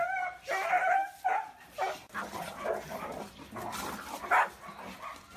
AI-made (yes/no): no